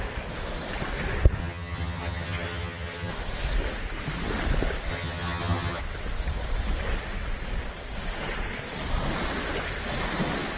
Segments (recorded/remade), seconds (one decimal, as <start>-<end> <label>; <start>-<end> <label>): 0.0-1.4 recorded; 1.4-3.1 remade; 3.1-4.9 recorded; 4.9-5.8 remade; 5.8-10.6 recorded